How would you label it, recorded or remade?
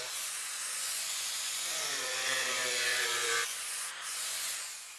remade